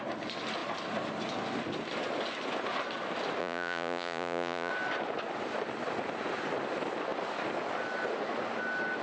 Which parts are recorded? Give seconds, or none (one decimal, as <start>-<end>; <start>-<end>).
0.0-3.4; 4.7-9.0